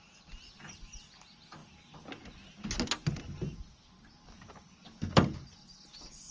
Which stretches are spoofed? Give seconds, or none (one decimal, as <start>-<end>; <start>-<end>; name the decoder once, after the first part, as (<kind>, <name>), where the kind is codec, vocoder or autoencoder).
none